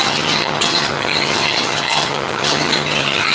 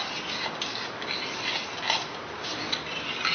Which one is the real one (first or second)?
second